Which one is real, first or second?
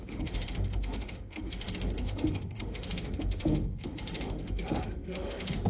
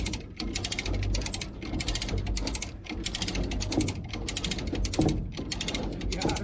second